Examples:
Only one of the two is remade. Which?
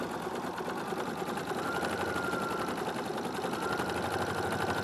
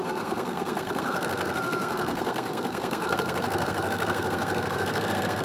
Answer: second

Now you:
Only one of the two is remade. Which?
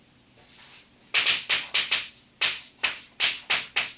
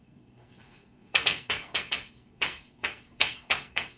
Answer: second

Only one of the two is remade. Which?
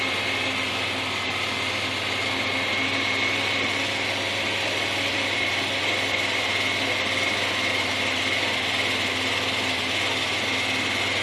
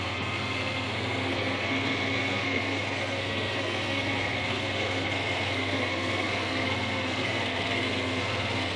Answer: second